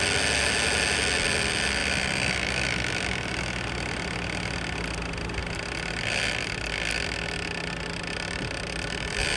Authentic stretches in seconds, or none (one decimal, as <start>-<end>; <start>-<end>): 0.0-9.4